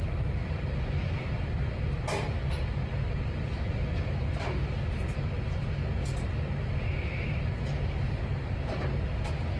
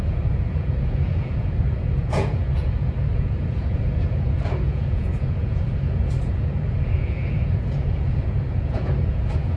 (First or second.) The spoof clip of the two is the second